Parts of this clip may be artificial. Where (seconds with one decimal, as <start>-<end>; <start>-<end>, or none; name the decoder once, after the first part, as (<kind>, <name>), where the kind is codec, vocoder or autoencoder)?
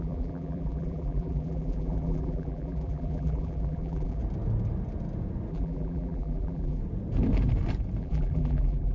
0.0-4.2 (vocoder, BigVGAN v2); 5.5-6.8; 8.0-8.9